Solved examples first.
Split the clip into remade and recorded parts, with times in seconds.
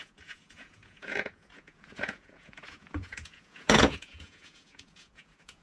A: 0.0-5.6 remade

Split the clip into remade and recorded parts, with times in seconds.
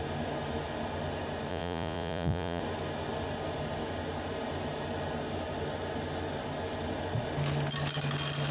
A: 0.0-1.5 recorded; 1.5-2.6 remade; 2.6-8.5 recorded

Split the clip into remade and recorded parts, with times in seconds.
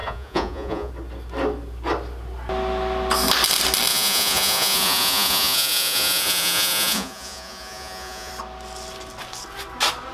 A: 0.0-0.9 remade; 0.9-3.9 recorded; 3.9-8.3 remade; 8.3-10.1 recorded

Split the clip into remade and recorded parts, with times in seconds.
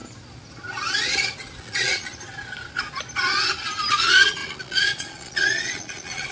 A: 0.0-1.6 recorded; 1.6-2.1 remade; 2.1-3.9 recorded; 3.9-6.3 remade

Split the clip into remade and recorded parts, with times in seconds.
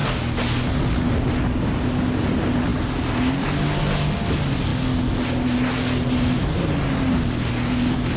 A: 0.0-8.2 recorded